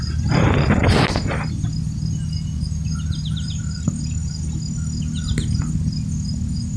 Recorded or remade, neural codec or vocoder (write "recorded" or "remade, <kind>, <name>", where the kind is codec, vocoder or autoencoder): recorded